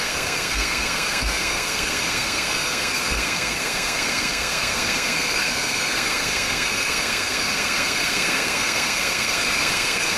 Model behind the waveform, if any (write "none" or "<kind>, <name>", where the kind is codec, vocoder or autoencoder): codec, SNAC